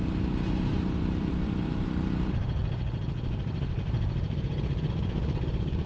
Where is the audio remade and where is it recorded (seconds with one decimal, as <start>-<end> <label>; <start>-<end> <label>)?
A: 0.0-2.6 remade; 2.6-3.4 recorded; 3.4-5.9 remade